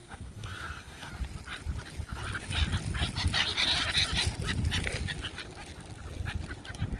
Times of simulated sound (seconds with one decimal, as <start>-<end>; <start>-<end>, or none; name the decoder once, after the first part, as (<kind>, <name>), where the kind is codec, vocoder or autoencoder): 0.0-1.1 (codec, SNAC)